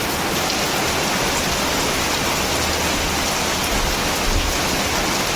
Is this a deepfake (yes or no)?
no